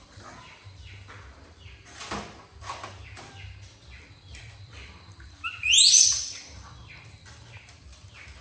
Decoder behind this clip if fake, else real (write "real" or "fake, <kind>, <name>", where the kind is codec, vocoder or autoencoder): fake, vocoder, BigVGAN v2